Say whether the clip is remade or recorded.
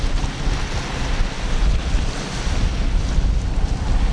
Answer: recorded